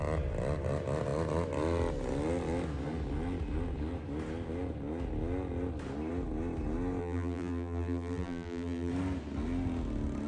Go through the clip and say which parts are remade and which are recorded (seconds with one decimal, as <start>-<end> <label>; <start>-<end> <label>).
0.0-7.0 recorded; 7.0-8.9 remade; 8.9-10.3 recorded